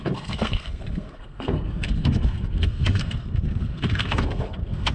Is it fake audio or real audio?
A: fake